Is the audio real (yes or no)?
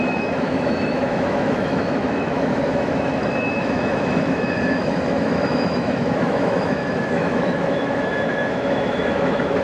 no